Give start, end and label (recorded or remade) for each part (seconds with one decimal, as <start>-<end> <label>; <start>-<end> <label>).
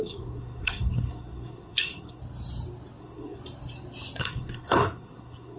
0.0-2.2 remade; 2.2-3.0 recorded; 3.0-3.4 remade; 3.4-4.2 recorded; 4.2-5.6 remade